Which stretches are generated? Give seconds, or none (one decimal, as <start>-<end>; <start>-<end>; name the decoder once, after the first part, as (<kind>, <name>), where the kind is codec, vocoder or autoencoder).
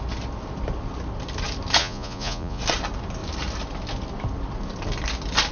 1.8-2.6 (vocoder, Vocos)